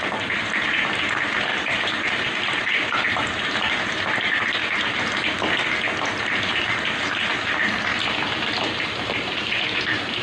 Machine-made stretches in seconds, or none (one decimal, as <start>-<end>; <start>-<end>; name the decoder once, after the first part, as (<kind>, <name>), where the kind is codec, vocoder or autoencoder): 0.0-4.6 (vocoder, BigVGAN v2); 6.6-7.9; 8.7-10.2